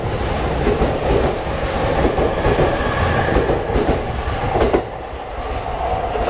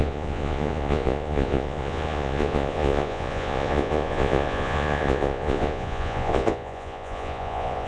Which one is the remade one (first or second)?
second